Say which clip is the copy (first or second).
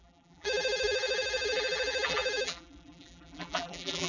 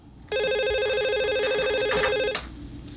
first